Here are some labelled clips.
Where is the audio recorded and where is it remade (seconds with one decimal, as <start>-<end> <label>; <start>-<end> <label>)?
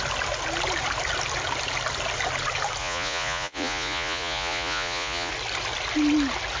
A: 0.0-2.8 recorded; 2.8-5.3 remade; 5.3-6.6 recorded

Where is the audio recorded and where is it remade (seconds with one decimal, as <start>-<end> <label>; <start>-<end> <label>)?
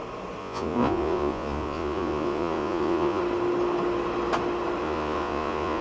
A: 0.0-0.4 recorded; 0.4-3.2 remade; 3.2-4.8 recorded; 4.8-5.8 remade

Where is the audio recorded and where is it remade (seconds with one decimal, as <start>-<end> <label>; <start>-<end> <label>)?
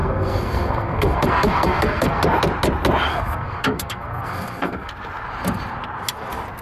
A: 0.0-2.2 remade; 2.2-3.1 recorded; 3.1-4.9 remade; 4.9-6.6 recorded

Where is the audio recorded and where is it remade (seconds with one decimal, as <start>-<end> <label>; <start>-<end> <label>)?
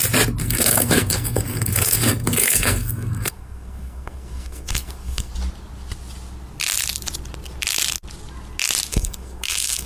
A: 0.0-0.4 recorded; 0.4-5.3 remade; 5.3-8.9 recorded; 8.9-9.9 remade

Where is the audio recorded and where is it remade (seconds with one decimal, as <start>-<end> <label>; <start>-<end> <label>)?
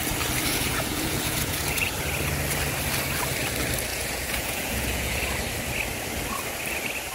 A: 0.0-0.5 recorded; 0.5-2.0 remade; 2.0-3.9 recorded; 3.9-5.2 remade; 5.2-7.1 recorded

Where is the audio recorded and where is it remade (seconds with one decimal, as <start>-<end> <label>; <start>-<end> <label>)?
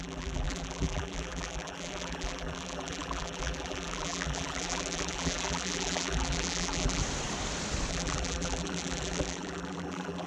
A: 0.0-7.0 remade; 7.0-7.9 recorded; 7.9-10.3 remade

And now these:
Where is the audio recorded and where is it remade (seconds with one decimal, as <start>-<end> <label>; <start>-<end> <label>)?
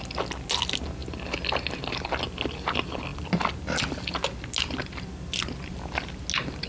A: 0.0-6.7 recorded